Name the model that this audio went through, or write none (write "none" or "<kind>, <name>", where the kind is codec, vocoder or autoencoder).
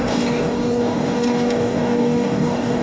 codec, DAC